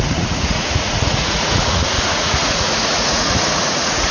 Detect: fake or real fake